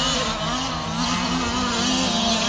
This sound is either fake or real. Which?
real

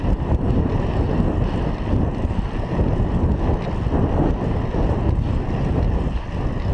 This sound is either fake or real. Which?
real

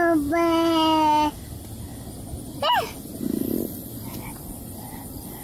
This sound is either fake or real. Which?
real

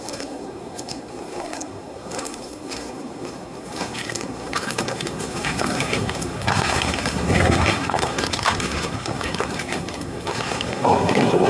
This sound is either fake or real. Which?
fake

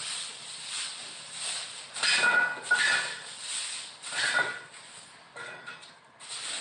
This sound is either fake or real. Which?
real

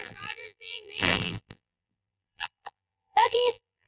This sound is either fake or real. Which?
fake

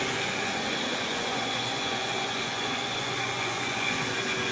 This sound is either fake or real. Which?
fake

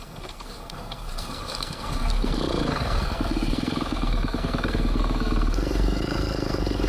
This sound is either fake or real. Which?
fake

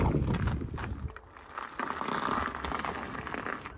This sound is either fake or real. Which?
real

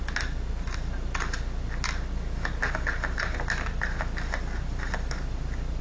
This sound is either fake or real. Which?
real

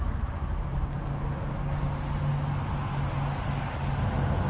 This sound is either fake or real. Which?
real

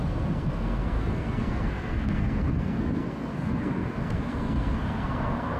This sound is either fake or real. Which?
fake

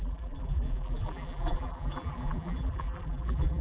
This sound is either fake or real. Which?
fake